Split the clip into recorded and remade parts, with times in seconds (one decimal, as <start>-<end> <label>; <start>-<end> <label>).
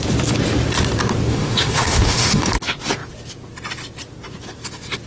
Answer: 0.0-1.3 recorded; 1.3-2.5 remade; 2.5-5.1 recorded